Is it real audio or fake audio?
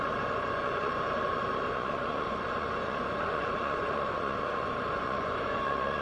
fake